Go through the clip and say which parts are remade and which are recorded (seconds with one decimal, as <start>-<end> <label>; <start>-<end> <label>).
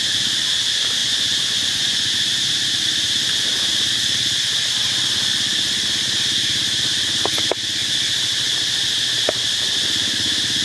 0.0-1.0 recorded; 1.0-2.1 remade; 2.1-10.6 recorded